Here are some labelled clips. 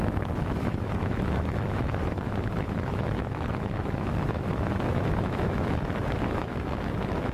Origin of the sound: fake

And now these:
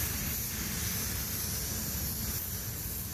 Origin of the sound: real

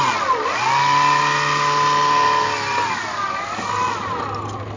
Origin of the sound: real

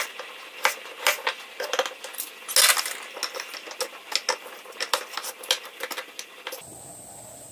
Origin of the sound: real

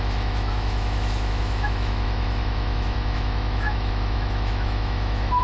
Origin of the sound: fake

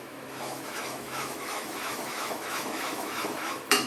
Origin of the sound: fake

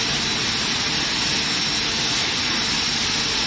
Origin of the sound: real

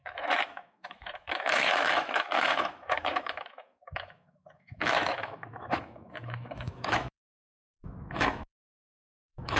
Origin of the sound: fake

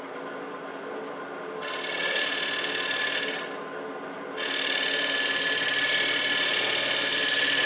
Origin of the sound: real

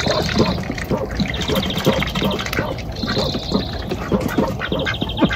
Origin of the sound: real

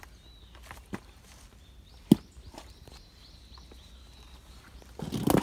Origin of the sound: real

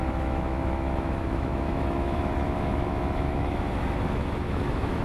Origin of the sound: fake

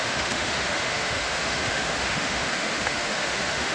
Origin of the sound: fake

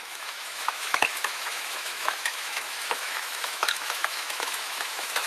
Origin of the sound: fake